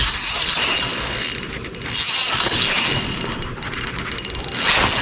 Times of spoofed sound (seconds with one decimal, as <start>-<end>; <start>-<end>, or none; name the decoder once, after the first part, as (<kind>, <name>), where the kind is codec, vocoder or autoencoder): none